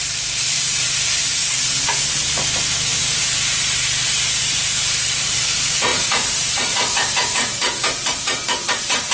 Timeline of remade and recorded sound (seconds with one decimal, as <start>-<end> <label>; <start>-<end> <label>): 0.0-1.4 remade; 1.4-4.4 recorded; 4.4-9.1 remade